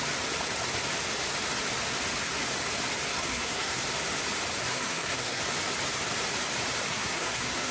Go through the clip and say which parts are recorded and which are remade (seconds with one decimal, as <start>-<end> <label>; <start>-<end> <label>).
0.0-3.1 recorded; 3.1-3.8 remade; 3.8-4.6 recorded; 4.6-5.4 remade; 5.4-6.9 recorded; 6.9-7.7 remade